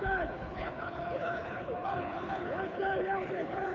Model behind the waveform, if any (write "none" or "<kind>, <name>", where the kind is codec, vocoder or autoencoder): codec, HILCodec